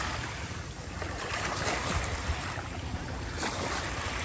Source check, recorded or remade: recorded